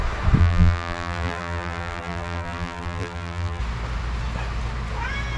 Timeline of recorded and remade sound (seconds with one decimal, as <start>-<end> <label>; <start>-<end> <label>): 0.0-0.4 recorded; 0.4-3.6 remade; 3.6-5.4 recorded